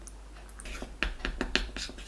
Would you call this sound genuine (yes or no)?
yes